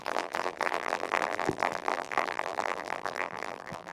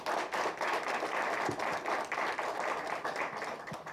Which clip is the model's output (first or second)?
first